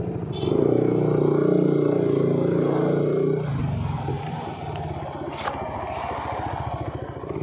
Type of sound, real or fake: real